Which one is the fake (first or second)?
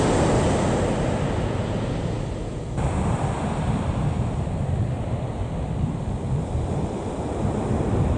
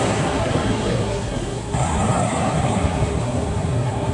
second